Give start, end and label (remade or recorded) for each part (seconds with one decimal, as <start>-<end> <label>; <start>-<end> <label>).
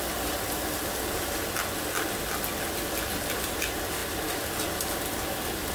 0.0-5.7 recorded